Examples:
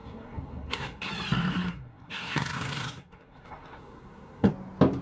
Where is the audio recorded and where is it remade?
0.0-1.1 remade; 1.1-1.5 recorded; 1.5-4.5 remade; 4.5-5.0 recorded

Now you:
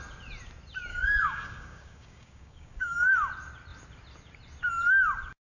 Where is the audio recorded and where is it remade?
0.0-0.9 recorded; 0.9-3.1 remade; 3.1-5.5 recorded

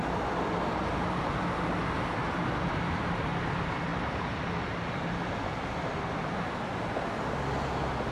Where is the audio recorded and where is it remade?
0.0-3.9 recorded; 3.9-4.5 remade; 4.5-8.1 recorded

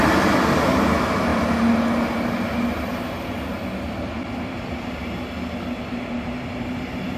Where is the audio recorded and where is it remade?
0.0-7.2 recorded

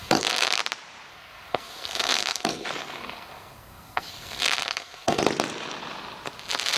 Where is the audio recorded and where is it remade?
0.0-0.6 remade; 0.6-1.1 recorded; 1.1-5.2 remade; 5.2-6.8 recorded

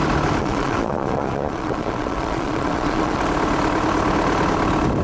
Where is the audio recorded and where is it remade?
0.0-0.4 recorded; 0.4-3.2 remade; 3.2-5.0 recorded